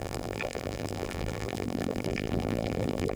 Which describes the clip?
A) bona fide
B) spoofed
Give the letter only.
B